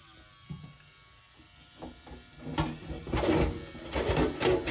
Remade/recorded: recorded